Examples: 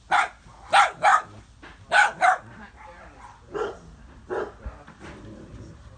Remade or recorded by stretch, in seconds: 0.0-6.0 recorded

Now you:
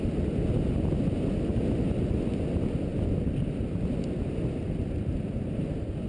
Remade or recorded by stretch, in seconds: 0.0-6.1 recorded

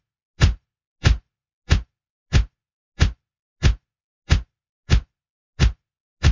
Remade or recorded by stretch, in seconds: 0.0-6.3 recorded

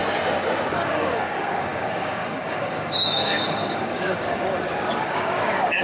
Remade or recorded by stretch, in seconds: 0.0-0.7 recorded; 0.7-5.8 remade

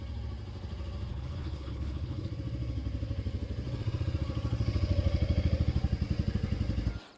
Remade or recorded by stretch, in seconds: 0.0-1.1 recorded; 1.1-2.3 remade; 2.3-7.2 recorded

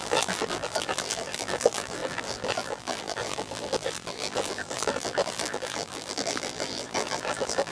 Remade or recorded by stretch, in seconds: 0.0-7.7 remade

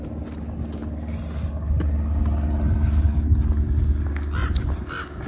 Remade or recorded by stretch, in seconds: 0.0-5.3 recorded

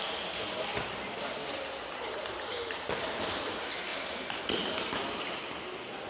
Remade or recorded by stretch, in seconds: 0.0-6.1 recorded